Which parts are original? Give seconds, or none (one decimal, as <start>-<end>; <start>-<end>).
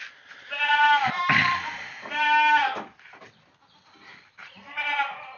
0.0-5.4